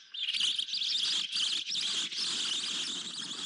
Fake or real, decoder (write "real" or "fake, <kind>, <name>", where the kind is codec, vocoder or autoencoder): real